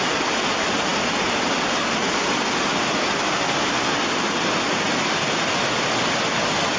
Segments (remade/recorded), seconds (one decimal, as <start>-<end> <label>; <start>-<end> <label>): 0.0-6.8 recorded